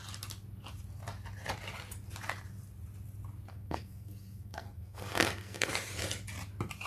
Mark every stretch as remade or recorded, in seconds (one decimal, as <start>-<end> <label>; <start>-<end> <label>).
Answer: 0.0-3.5 recorded; 3.5-5.7 remade; 5.7-6.9 recorded